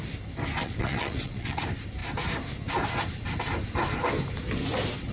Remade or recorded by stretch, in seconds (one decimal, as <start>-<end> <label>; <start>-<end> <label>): 0.0-0.6 recorded; 0.6-1.6 remade; 1.6-5.1 recorded